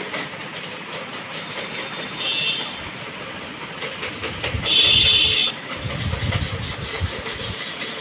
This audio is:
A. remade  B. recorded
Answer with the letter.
B